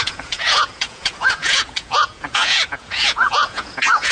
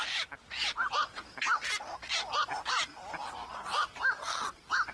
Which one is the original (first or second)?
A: second